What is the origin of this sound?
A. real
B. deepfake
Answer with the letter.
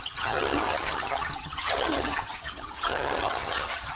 B